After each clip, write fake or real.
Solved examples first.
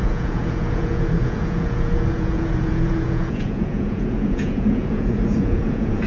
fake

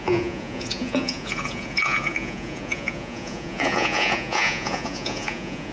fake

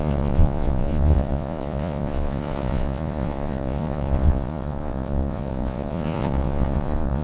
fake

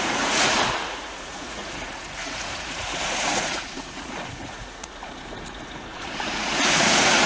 fake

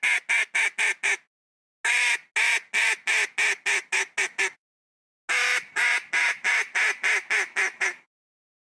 real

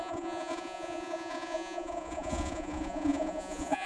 fake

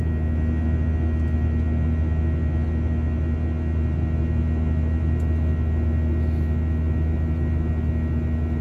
real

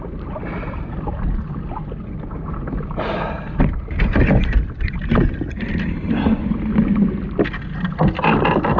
real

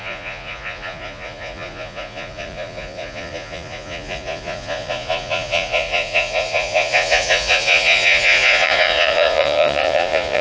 fake